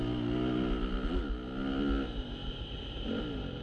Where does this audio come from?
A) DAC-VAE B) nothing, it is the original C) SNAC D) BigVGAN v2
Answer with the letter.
B